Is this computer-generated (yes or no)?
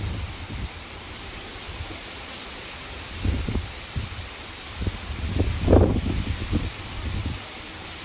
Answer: yes